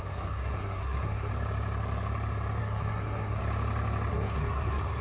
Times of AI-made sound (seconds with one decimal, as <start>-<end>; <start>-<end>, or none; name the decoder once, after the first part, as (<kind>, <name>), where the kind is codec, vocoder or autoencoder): 0.0-1.3 (codec, SNAC); 2.6-3.4; 4.1-5.0